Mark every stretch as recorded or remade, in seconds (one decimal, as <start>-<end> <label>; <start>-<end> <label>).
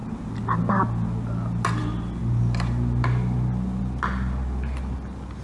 0.0-5.4 recorded